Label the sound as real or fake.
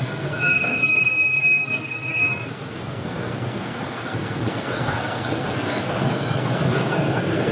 fake